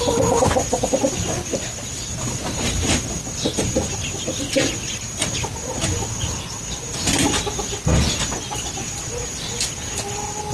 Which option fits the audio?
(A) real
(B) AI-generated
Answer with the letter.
A